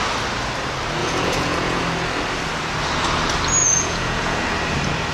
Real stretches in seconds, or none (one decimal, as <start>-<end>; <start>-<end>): 0.0-1.0; 1.8-3.6; 4.4-5.1